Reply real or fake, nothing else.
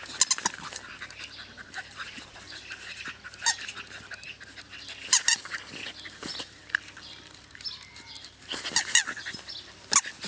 real